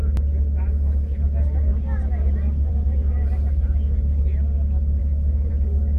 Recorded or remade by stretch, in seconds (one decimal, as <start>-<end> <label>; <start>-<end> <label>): 0.0-5.0 recorded; 5.0-5.5 remade; 5.5-6.0 recorded